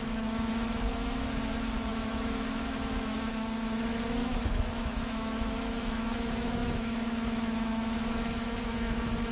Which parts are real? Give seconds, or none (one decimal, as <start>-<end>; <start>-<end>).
none